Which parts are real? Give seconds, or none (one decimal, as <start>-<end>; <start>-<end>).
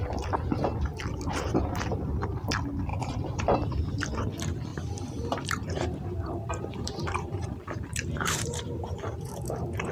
0.0-2.9; 4.1-4.7